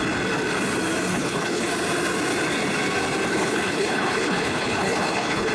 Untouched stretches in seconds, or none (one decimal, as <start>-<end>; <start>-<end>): 0.0-1.1; 1.7-3.3